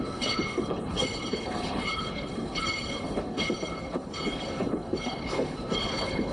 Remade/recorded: remade